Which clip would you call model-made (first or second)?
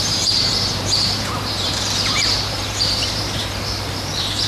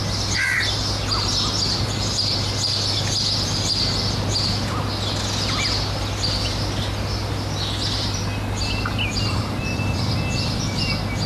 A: first